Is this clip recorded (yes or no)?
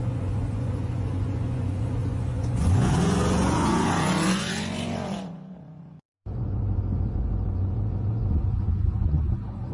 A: no